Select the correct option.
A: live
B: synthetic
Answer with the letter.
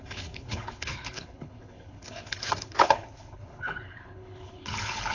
B